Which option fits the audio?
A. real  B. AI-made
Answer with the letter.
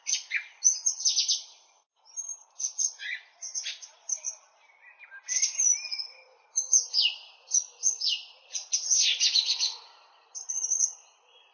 A